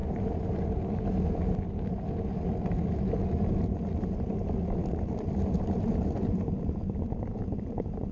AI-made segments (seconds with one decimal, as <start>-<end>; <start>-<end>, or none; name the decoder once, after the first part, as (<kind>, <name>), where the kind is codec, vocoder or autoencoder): 4.8-8.1 (vocoder, BigVGAN v2)